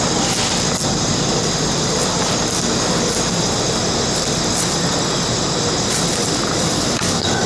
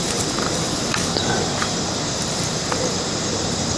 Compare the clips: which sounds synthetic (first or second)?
second